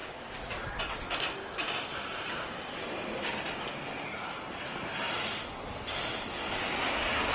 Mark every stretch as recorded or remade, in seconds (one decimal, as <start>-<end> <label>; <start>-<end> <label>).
0.0-0.8 remade; 0.8-1.6 recorded; 1.6-6.0 remade; 6.0-7.3 recorded

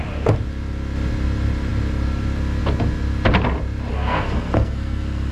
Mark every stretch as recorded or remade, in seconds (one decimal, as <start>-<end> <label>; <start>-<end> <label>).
0.0-3.9 recorded; 3.9-5.3 remade

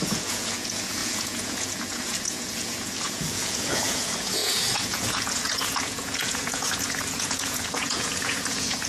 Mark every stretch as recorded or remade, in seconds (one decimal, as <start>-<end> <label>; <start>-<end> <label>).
0.0-8.9 remade

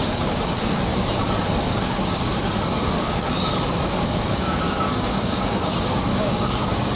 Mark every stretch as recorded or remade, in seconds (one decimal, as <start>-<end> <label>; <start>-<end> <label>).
0.0-0.9 remade; 0.9-1.8 recorded; 1.8-2.2 remade; 2.2-3.0 recorded; 3.0-3.5 remade; 3.5-4.0 recorded; 4.0-7.0 remade